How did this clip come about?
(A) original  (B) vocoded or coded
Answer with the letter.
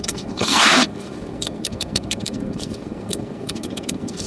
B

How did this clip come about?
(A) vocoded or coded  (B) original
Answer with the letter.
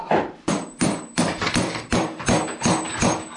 A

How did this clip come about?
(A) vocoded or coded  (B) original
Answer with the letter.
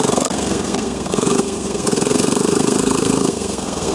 A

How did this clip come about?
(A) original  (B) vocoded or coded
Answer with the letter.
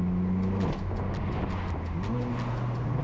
A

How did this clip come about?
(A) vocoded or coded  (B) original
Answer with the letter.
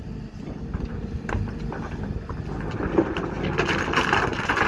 B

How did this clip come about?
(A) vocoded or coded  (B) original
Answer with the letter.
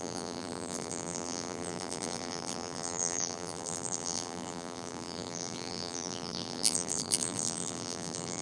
A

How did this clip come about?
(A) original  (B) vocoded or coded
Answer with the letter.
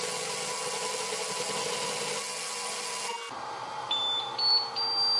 A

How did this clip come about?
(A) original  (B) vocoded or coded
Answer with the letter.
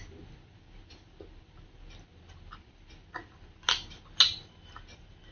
A